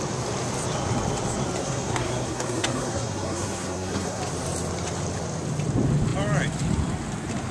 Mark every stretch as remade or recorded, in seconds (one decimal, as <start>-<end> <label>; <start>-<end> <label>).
0.0-1.6 recorded; 1.6-4.2 remade; 4.2-7.5 recorded